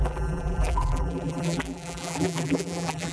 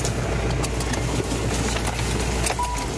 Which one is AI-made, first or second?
first